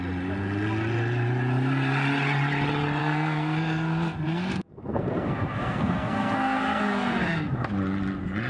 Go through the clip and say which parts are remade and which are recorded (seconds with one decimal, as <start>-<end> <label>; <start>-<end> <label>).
0.0-3.0 recorded; 3.0-7.5 remade; 7.5-8.5 recorded